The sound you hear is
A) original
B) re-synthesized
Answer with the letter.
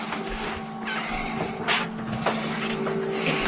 A